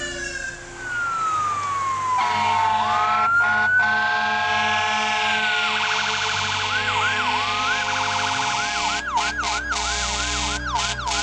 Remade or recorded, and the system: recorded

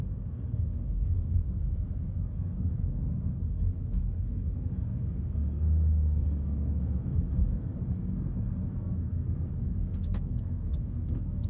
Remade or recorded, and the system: remade, codec, SNAC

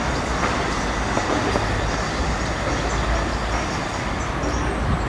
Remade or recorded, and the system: recorded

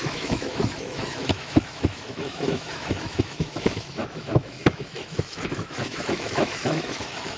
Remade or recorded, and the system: remade, autoencoder, DAC-VAE